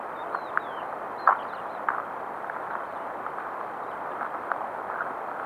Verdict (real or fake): real